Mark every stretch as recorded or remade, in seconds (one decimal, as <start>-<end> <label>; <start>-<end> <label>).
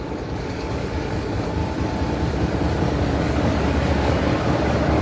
0.0-1.6 remade; 1.6-2.8 recorded; 2.8-4.3 remade; 4.3-5.0 recorded